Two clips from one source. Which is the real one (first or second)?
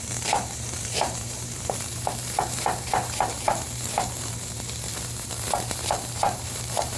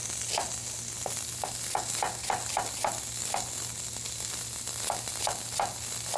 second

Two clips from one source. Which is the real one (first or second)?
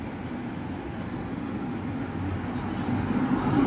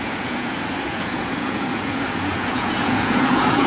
first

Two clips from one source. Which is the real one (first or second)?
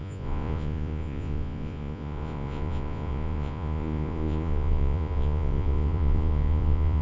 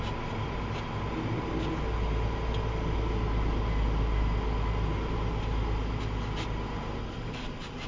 second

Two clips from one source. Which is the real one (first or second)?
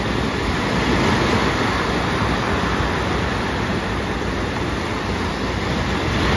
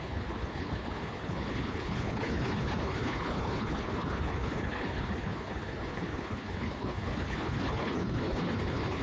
first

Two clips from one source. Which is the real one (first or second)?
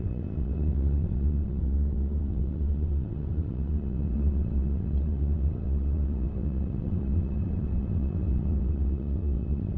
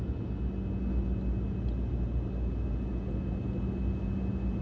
second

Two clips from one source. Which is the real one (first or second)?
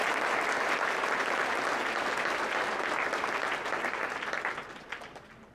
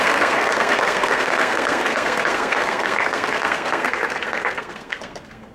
first